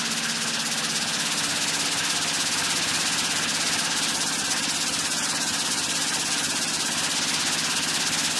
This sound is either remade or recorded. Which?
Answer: recorded